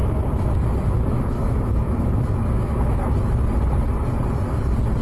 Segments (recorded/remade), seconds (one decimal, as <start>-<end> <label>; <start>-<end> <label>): 0.0-3.0 remade; 3.0-5.0 recorded